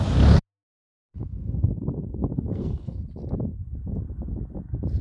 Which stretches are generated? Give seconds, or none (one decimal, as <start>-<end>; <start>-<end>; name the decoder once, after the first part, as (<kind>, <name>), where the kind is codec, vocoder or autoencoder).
1.0-3.0 (codec, SNAC)